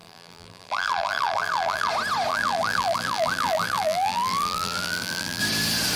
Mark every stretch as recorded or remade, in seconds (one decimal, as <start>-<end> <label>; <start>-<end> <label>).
0.0-1.9 remade; 1.9-2.3 recorded; 2.3-5.4 remade; 5.4-6.0 recorded